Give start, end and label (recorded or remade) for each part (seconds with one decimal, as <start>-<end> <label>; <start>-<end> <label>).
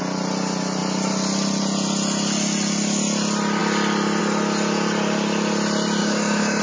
0.0-6.0 recorded; 6.0-6.6 remade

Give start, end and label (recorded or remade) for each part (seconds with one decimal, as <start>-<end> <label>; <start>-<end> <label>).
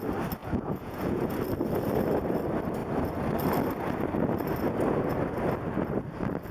0.0-0.4 recorded; 0.4-1.3 remade; 1.3-6.5 recorded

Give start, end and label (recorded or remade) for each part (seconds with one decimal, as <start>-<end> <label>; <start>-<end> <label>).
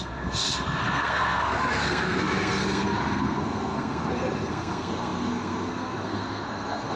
0.0-7.0 remade